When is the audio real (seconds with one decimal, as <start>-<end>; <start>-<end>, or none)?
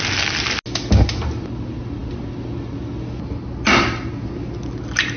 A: 0.0-5.2